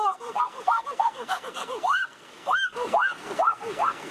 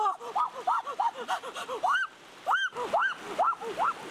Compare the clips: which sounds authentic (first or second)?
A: second